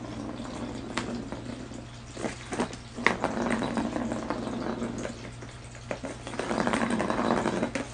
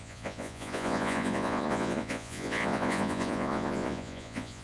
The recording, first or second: first